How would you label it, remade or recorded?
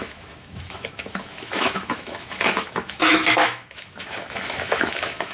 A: remade